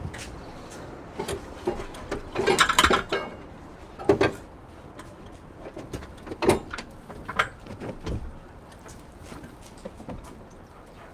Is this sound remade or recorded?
recorded